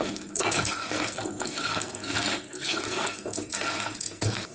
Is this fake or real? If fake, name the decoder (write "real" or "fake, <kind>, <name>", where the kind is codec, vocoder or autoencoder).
fake, codec, SNAC